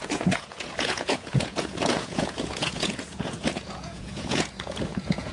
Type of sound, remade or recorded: remade